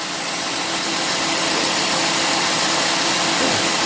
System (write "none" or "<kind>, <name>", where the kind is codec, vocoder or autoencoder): none